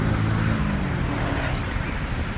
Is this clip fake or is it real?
real